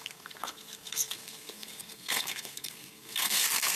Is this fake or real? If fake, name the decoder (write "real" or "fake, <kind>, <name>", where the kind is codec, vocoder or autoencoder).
fake, codec, SNAC